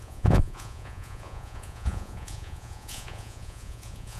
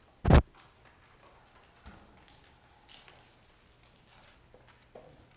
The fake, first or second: first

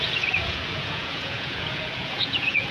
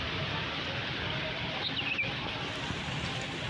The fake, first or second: first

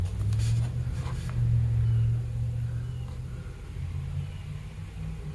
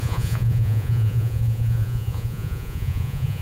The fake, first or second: second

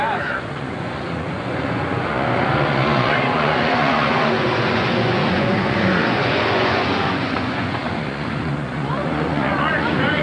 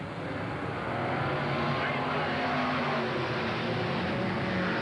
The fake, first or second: first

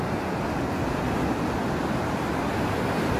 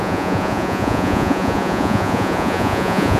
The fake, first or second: second